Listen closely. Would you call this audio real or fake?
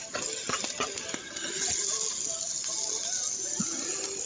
real